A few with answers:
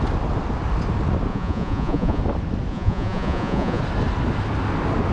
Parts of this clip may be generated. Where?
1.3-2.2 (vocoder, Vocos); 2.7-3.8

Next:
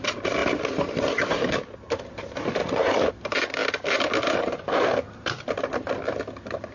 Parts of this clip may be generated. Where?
2.6-3.1 (vocoder, Vocos)

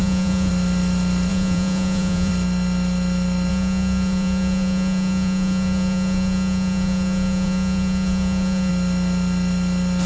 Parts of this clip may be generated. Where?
0.0-0.5 (vocoder, Vocos); 1.3-2.3; 3.5-8.7

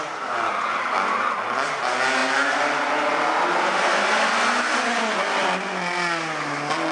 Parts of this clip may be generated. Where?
none

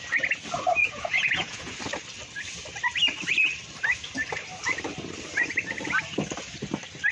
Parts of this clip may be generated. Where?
0.8-1.8 (vocoder, Vocos)

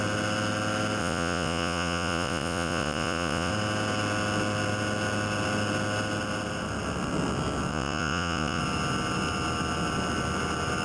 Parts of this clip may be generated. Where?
1.0-3.5 (vocoder, Vocos); 7.7-8.6